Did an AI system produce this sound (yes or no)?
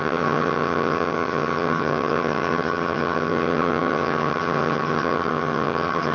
yes